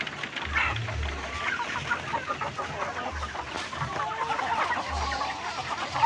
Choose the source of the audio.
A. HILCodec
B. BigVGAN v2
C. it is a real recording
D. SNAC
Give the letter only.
C